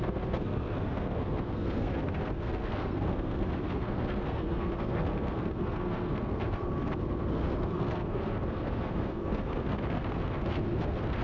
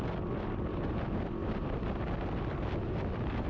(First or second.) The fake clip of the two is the first